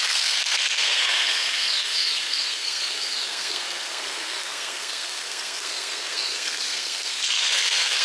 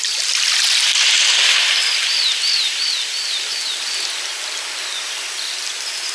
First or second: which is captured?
second